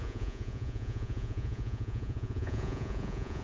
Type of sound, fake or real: fake